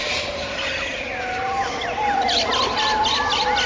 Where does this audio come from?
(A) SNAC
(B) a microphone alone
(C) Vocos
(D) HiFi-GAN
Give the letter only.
B